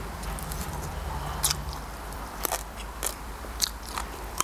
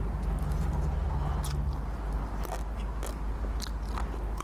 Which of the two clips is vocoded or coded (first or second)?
first